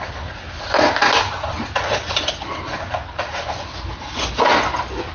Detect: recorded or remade recorded